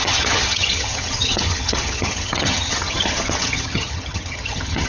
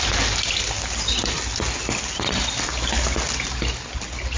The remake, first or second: first